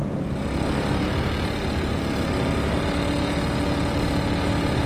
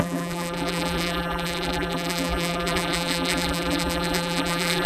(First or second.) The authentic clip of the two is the first